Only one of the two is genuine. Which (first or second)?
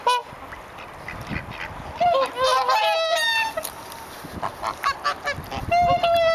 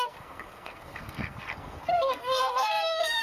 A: first